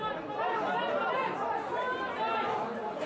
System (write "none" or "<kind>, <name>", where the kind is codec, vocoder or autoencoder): none